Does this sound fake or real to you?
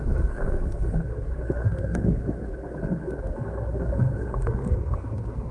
fake